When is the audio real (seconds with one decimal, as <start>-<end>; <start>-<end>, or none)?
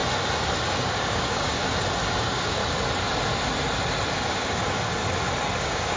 0.0-0.7; 1.6-2.2; 2.6-4.1; 5.0-5.6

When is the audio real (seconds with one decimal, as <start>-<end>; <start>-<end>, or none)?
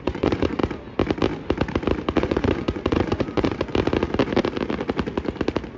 0.6-2.2; 3.7-5.8